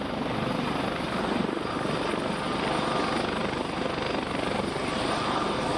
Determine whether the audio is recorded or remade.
recorded